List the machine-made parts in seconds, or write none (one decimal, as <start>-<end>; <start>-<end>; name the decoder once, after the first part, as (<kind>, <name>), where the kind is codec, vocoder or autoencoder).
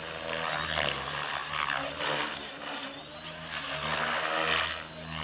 none